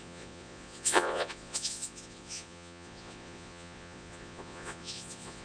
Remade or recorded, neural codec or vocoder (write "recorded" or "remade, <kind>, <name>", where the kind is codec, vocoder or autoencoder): remade, vocoder, Vocos